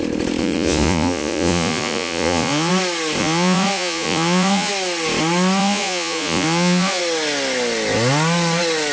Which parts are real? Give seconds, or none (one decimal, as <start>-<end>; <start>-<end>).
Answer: 0.0-0.4; 2.7-3.2; 4.7-5.6; 7.0-8.9